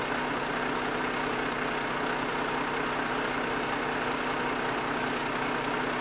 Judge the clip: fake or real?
real